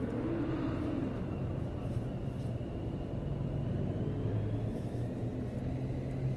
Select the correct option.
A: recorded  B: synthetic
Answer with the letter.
A